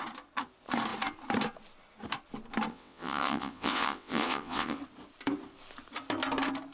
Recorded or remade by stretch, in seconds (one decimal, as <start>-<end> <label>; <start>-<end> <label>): 0.0-2.7 recorded; 2.7-4.8 remade; 4.8-6.7 recorded